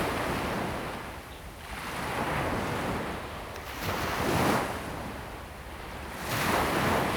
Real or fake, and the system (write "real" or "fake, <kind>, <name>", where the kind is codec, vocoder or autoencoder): real